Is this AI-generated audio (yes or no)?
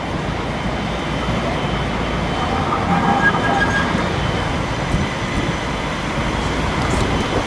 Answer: no